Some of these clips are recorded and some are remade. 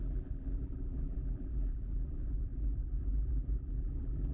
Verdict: remade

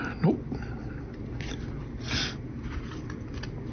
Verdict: recorded